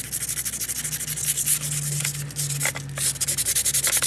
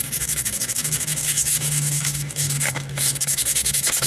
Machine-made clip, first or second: second